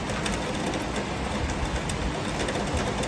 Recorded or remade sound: recorded